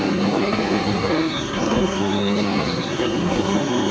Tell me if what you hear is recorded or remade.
remade